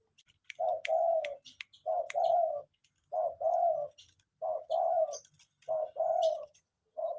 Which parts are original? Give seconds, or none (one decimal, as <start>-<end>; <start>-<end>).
0.0-6.3